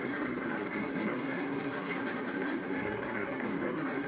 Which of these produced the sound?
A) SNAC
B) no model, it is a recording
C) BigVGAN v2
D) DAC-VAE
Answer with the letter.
A